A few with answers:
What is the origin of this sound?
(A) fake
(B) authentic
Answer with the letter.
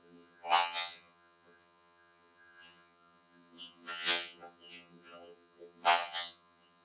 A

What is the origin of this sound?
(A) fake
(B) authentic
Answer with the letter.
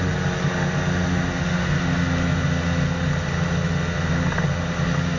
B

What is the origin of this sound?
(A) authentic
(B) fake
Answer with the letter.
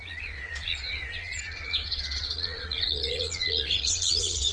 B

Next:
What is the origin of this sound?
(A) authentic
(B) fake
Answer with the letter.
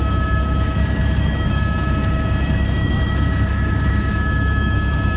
B